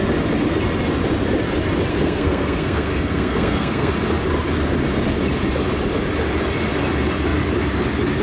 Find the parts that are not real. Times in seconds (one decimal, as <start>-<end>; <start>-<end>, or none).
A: 1.9-3.9